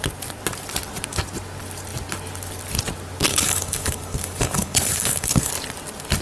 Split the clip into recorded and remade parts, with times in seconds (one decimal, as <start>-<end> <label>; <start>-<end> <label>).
0.0-3.3 recorded; 3.3-5.5 remade; 5.5-6.2 recorded